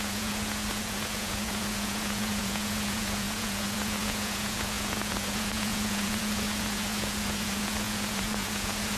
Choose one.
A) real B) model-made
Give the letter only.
B